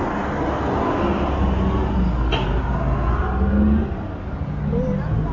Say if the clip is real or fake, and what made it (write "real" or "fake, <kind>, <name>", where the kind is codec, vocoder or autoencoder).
real